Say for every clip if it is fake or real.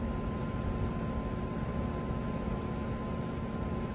real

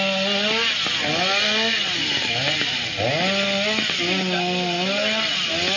real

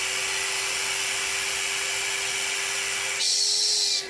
real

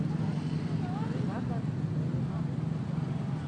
real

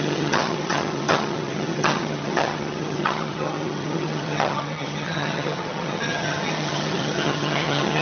fake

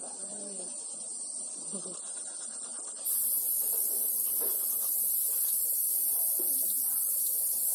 fake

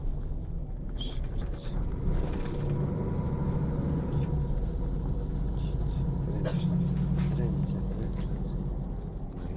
real